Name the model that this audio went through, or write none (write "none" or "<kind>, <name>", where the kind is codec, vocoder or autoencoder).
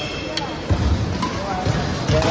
none